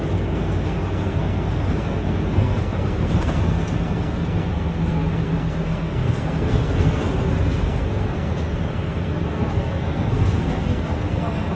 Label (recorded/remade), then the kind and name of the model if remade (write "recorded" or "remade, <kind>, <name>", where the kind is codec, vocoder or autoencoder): remade, codec, SNAC